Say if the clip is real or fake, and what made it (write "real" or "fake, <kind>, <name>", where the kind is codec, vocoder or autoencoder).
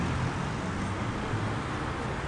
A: real